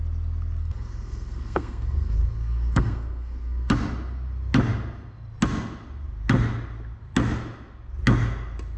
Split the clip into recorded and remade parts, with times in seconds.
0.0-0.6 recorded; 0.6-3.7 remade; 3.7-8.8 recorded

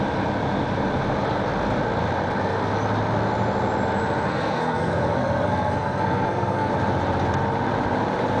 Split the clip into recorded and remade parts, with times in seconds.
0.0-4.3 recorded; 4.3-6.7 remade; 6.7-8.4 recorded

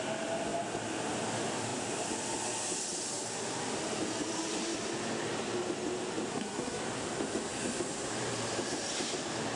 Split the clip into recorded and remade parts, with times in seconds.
0.0-6.3 recorded; 6.3-6.8 remade; 6.8-9.6 recorded